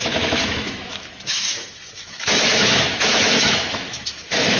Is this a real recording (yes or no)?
no